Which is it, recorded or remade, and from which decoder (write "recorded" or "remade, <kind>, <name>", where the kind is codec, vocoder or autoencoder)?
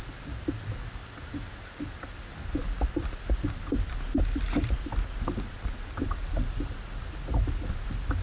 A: recorded